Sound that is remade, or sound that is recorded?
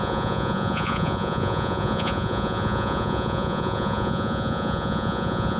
remade